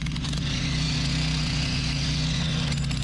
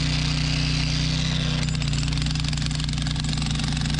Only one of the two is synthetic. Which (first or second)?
first